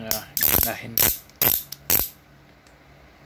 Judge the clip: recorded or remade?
recorded